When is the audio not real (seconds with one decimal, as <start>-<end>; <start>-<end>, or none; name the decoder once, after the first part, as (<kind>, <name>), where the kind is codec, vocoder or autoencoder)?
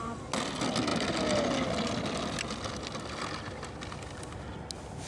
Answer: none